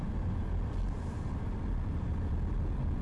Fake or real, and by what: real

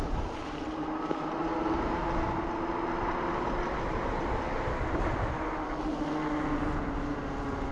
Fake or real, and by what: real